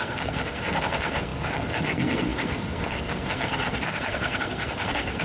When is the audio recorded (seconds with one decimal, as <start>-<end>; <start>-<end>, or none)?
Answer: none